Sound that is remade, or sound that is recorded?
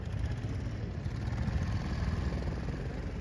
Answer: recorded